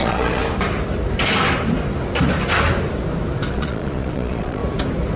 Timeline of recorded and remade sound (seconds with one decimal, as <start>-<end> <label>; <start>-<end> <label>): 0.0-0.4 remade; 0.4-3.5 recorded; 3.5-4.6 remade; 4.6-5.2 recorded